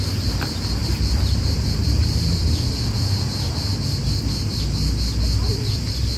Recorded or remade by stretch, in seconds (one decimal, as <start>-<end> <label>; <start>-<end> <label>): 0.0-0.8 recorded; 0.8-2.5 remade; 2.5-6.2 recorded